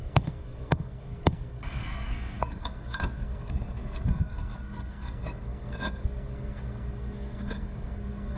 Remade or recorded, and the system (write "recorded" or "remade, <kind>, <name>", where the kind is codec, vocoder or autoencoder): remade, codec, SNAC